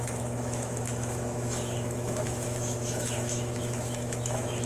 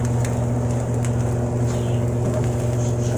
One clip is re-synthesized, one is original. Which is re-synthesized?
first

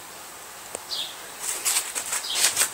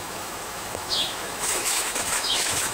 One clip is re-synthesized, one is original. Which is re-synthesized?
second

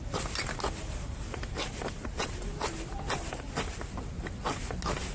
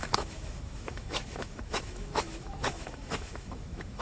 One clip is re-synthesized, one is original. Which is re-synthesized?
second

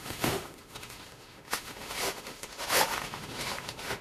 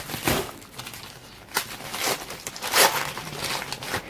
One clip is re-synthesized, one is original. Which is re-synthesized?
first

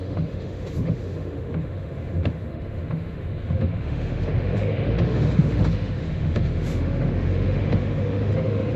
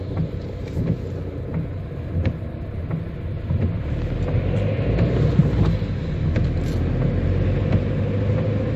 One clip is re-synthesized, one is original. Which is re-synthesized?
first